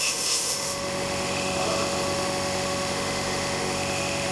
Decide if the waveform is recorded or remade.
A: remade